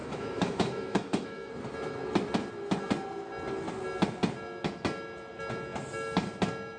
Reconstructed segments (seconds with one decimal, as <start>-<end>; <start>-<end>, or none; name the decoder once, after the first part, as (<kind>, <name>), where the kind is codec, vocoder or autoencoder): 0.0-1.5 (autoencoder, DAC-VAE)